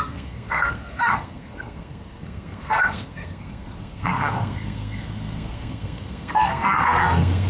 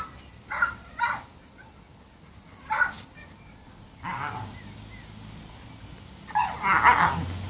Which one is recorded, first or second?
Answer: second